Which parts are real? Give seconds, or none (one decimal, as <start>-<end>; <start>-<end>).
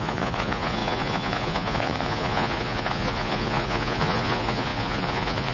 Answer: none